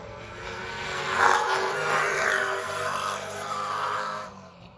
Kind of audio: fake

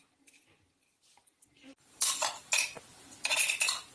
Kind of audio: real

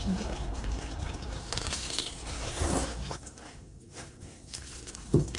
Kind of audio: fake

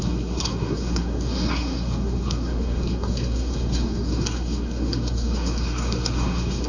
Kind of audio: fake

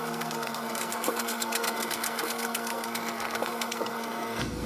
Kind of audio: fake